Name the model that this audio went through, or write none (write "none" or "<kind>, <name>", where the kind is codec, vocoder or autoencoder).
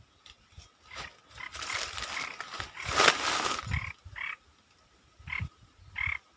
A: none